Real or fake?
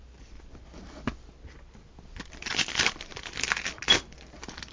real